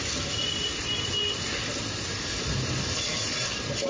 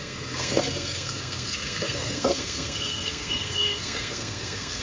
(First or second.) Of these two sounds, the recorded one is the first